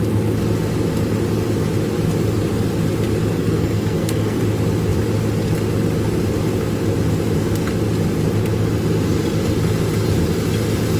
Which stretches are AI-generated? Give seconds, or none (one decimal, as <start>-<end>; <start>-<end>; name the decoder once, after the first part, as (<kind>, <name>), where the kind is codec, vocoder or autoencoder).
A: 3.3-4.4 (codec, SNAC)